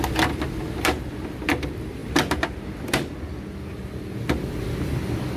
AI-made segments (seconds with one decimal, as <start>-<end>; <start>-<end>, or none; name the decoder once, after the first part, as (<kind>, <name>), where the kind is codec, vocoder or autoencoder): none

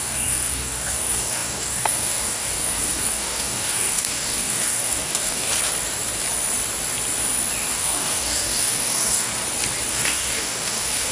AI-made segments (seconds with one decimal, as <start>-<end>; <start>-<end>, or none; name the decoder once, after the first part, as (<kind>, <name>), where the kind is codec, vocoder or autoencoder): 0.0-5.5 (codec, DAC); 7.7-9.3; 9.9-11.1

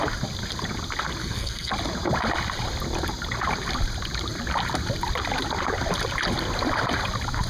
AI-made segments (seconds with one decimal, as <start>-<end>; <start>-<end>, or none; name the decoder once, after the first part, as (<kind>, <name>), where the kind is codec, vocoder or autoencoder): 1.2-1.7 (codec, SNAC)

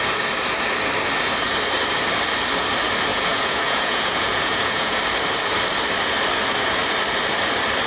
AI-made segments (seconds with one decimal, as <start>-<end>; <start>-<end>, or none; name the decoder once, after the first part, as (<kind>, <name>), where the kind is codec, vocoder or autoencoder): 3.1-5.0 (vocoder, Vocos)

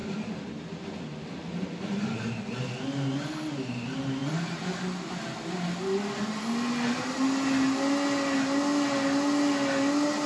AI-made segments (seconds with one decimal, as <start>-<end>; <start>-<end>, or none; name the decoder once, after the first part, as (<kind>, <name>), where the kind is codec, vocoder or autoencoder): 0.0-0.5 (vocoder, BigVGAN v2); 4.2-5.1

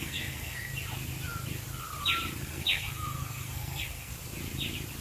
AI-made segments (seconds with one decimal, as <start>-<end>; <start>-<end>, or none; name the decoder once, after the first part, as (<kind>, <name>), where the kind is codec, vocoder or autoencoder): 0.0-0.7 (codec, SNAC); 2.4-4.1

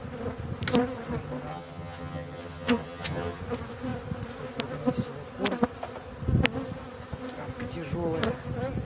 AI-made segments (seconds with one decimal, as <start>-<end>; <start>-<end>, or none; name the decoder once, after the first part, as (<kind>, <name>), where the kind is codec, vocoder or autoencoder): 1.5-3.4 (vocoder, HiFi-GAN)